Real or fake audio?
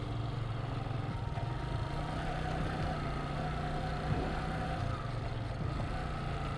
real